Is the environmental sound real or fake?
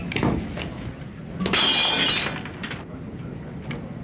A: real